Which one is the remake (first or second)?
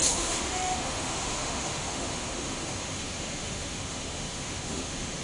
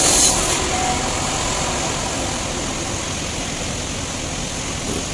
first